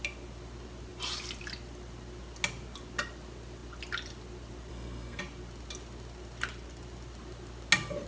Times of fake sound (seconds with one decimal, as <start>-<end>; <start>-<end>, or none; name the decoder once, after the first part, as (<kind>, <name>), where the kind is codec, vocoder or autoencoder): 4.7-5.2 (codec, SNAC)